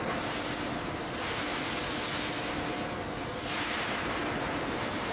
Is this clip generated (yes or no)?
no